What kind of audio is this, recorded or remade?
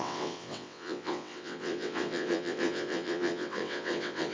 remade